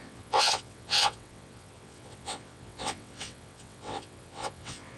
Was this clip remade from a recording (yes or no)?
yes